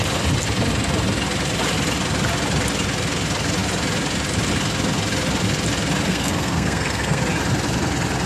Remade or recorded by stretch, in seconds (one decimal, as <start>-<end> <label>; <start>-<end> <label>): 0.0-6.1 recorded; 6.1-7.2 remade; 7.2-8.3 recorded